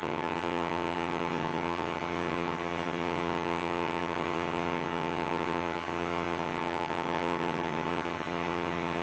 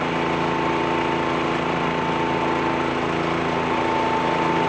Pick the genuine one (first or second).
second